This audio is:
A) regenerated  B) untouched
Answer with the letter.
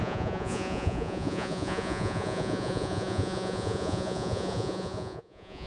A